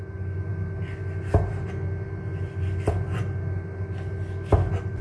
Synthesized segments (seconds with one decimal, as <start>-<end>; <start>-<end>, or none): none